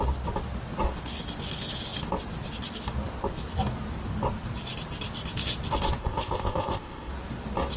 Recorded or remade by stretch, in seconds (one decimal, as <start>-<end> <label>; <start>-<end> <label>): 0.0-6.0 recorded; 6.0-7.1 remade; 7.1-7.8 recorded

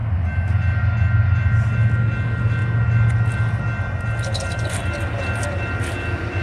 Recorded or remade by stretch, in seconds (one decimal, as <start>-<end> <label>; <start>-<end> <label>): 0.0-6.4 recorded

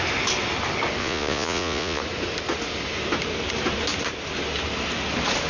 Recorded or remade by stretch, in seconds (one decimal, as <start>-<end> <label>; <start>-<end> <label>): 0.0-1.0 recorded; 1.0-2.0 remade; 2.0-5.5 recorded

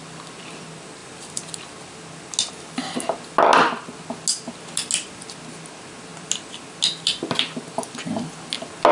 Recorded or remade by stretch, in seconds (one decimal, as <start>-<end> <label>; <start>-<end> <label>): 0.0-8.9 recorded

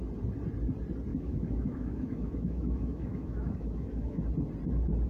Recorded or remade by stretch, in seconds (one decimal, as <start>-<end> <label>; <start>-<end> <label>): 0.0-1.1 recorded; 1.1-4.2 remade; 4.2-5.1 recorded